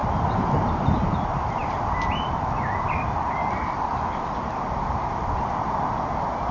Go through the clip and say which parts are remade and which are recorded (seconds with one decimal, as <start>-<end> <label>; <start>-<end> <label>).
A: 0.0-1.0 remade; 1.0-1.6 recorded; 1.6-5.5 remade; 5.5-6.5 recorded